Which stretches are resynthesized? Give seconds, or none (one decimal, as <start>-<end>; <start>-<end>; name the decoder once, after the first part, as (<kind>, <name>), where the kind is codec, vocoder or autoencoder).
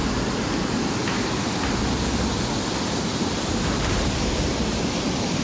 3.2-5.4 (vocoder, BigVGAN v2)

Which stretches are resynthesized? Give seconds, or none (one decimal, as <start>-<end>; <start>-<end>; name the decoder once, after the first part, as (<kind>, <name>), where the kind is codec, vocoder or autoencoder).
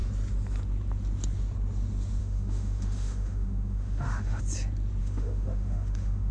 2.2-4.4 (autoencoder, DAC-VAE); 5.0-6.3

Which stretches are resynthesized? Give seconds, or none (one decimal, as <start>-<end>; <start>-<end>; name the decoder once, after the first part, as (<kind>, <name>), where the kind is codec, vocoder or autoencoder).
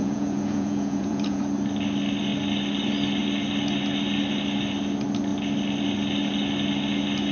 0.0-1.4 (vocoder, Vocos)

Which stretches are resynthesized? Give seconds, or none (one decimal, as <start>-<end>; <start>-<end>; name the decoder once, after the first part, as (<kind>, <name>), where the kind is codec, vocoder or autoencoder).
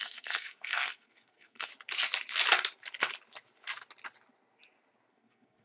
0.0-1.7 (codec, SNAC); 5.1-5.6